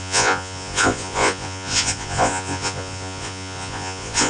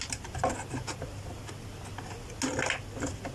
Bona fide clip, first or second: second